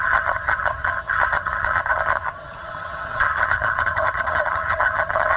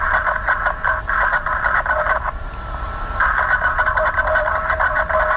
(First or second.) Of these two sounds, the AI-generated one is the first